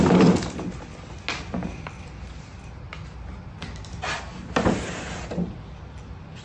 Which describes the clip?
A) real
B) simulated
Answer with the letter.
A